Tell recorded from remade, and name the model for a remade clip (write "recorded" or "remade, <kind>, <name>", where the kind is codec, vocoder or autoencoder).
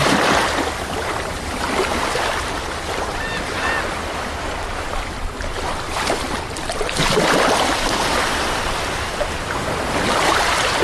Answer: remade, vocoder, BigVGAN v2